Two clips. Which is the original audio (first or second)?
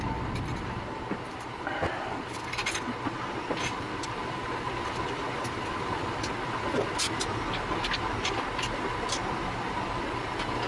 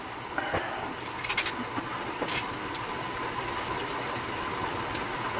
second